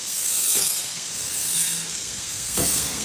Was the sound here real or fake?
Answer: fake